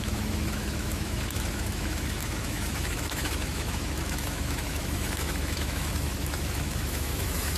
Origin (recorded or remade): remade